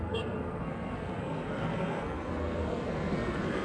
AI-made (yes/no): yes